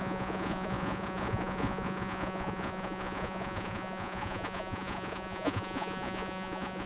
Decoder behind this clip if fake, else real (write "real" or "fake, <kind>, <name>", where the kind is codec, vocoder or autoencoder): fake, vocoder, Vocos